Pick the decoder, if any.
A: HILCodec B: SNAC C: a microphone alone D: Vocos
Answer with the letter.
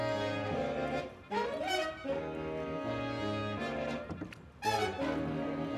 C